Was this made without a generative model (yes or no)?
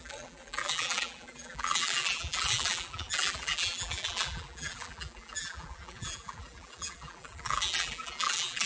no